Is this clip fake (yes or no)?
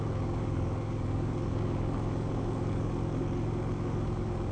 yes